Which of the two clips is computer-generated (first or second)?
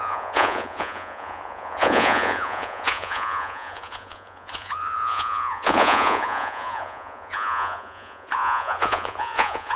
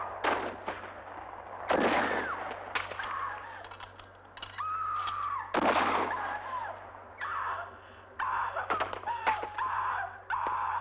first